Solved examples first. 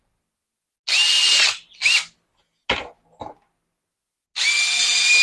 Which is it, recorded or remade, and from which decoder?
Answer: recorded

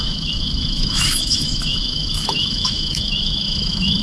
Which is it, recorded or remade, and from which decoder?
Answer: remade, autoencoder, DAC-VAE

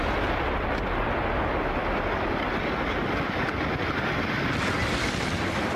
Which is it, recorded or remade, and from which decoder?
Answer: recorded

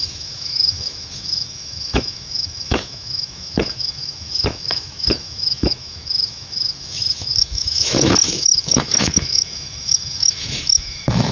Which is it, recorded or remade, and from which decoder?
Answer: remade, autoencoder, DAC-VAE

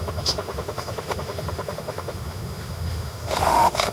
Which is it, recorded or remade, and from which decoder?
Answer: remade, autoencoder, DAC-VAE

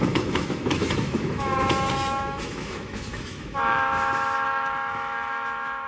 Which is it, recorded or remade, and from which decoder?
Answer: remade, autoencoder, DAC-VAE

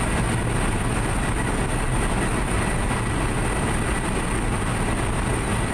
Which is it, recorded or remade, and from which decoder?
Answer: recorded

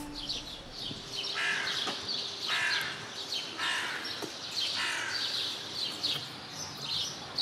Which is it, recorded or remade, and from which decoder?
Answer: recorded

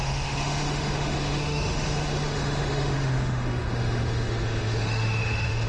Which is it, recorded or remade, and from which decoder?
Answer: remade, autoencoder, DAC-VAE